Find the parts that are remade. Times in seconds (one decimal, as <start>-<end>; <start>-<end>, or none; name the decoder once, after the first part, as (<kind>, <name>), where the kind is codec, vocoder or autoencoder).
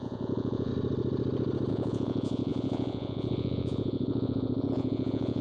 0.0-0.7 (vocoder, Vocos); 1.7-5.4